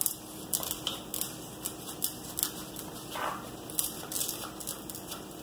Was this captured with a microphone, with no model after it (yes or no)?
yes